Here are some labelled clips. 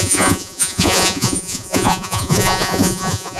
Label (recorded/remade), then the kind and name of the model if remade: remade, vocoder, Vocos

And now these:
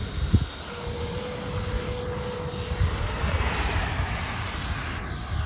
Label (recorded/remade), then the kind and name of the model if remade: recorded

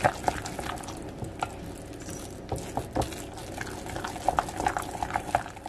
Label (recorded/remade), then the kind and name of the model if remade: recorded